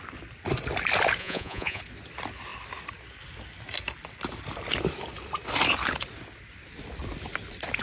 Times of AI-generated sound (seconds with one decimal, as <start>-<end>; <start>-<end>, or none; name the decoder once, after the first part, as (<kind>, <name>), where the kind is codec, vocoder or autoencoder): 1.2-1.8 (vocoder, Vocos)

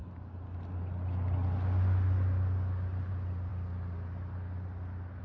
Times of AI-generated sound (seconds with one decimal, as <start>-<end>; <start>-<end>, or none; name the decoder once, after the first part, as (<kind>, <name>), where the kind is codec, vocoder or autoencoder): none

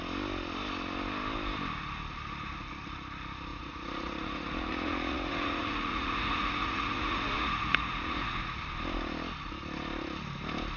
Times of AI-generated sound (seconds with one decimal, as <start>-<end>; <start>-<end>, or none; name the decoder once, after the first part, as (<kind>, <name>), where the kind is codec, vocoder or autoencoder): 3.5-8.6 (vocoder, Vocos)